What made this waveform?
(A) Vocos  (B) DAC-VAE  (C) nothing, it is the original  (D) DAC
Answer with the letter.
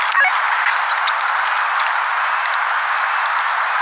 C